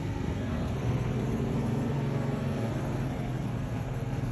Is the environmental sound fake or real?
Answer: fake